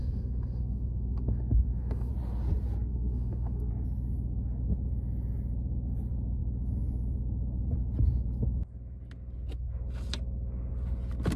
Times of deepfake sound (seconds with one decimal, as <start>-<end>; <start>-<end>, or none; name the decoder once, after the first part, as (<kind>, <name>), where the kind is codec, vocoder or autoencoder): 0.0-2.1 (autoencoder, DAC-VAE); 2.9-3.7